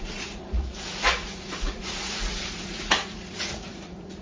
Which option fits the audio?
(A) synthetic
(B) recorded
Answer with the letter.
A